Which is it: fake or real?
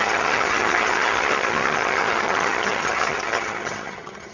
fake